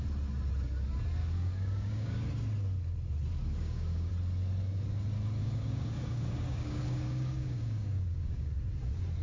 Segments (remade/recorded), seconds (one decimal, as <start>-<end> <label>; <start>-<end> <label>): 0.0-1.2 recorded; 1.2-2.3 remade; 2.3-3.4 recorded; 3.4-4.1 remade; 4.1-5.4 recorded; 5.4-8.5 remade; 8.5-9.2 recorded